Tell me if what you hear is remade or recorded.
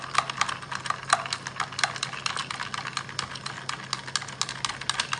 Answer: recorded